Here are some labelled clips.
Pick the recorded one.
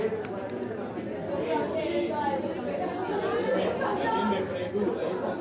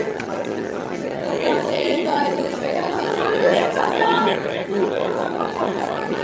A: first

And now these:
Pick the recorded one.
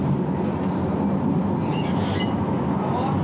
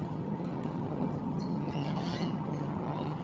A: first